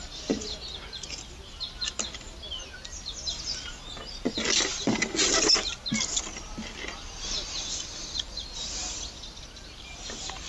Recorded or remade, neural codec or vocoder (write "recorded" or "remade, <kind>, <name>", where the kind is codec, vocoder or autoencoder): recorded